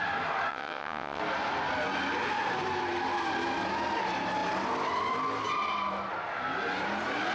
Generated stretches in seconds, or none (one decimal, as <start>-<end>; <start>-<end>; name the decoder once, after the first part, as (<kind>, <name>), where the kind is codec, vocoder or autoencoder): 0.5-1.2 (vocoder, WaveNeXt)